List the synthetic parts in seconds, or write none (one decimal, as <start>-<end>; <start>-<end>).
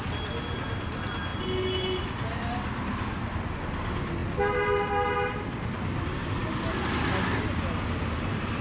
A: none